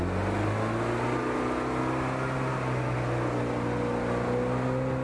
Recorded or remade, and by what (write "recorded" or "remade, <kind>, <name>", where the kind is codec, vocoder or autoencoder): recorded